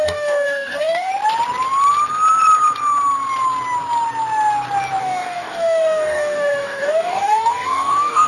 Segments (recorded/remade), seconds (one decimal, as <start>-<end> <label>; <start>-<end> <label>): 0.0-1.1 remade; 1.1-5.0 recorded; 5.0-8.3 remade